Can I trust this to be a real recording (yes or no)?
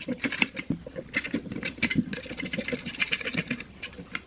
yes